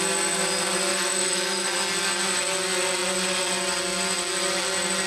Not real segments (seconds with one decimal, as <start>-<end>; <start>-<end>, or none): 0.9-1.7